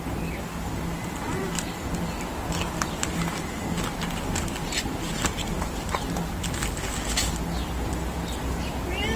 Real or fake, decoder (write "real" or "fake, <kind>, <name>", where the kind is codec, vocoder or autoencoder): real